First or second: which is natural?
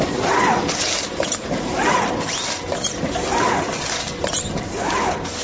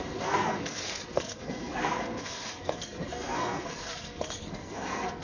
first